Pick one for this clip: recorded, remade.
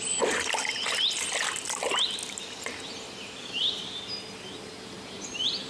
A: recorded